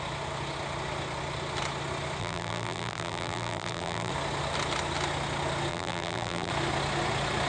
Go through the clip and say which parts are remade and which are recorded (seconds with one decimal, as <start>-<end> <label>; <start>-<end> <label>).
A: 0.0-2.2 recorded; 2.2-4.1 remade; 4.1-5.7 recorded; 5.7-6.5 remade; 6.5-7.5 recorded

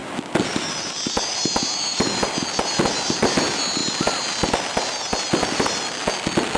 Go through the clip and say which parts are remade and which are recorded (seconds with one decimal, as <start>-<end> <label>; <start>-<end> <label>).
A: 0.0-6.6 recorded

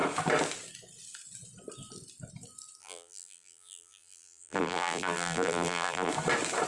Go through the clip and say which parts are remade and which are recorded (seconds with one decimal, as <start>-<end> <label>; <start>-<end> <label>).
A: 0.0-2.8 recorded; 2.8-6.1 remade; 6.1-6.7 recorded

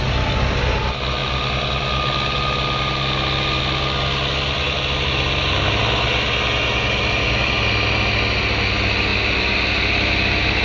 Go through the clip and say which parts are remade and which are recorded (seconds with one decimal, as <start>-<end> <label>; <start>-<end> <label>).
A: 0.0-10.6 recorded

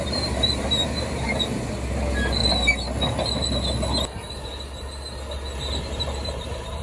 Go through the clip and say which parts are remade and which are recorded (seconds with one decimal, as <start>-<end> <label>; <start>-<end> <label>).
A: 0.0-2.4 remade; 2.4-5.8 recorded; 5.8-6.8 remade

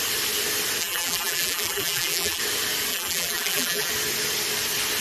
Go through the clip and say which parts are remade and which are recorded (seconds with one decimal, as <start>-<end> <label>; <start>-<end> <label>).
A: 0.0-0.8 recorded; 0.8-2.4 remade; 2.4-2.9 recorded; 2.9-3.9 remade; 3.9-5.0 recorded

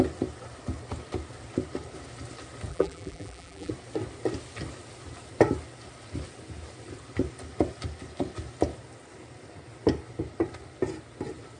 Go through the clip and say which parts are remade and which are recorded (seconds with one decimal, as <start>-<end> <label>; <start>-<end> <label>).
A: 0.0-2.7 recorded; 2.7-3.7 remade; 3.7-11.6 recorded